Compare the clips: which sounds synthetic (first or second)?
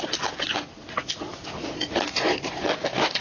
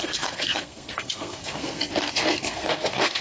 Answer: second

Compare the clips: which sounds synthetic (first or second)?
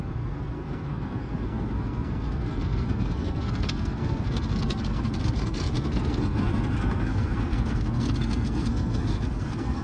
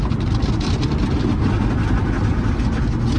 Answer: first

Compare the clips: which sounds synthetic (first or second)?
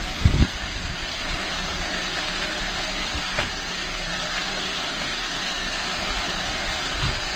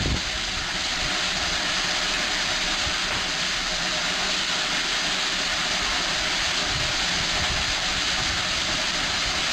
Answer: first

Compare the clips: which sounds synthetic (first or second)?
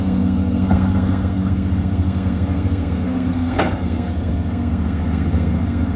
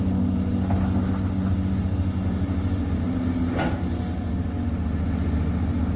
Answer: first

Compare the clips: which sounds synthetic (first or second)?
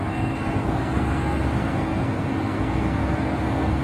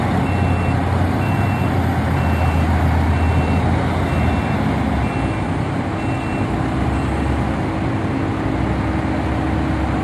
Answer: first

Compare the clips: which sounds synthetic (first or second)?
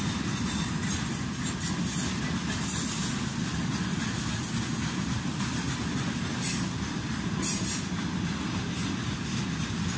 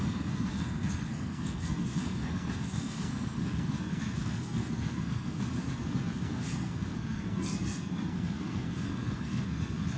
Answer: second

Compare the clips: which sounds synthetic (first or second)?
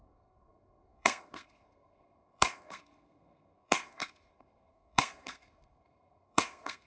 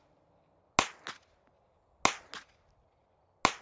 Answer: first